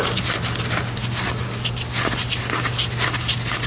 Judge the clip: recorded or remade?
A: recorded